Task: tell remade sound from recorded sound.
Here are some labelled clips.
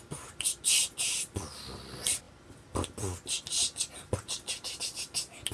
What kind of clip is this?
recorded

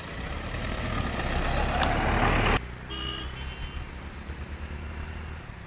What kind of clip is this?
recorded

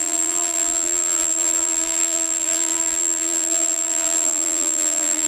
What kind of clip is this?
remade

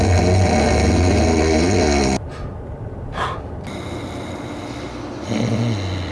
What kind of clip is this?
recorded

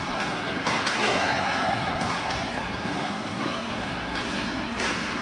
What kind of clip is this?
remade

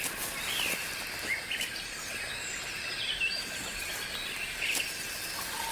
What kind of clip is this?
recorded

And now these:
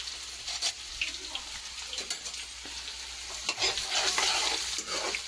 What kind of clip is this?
recorded